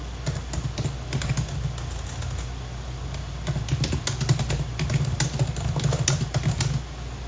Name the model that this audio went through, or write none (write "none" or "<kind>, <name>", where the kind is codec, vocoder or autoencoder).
none